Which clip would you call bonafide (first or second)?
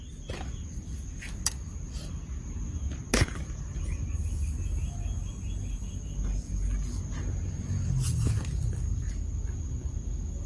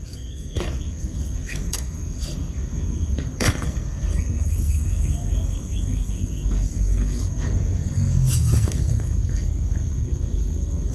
first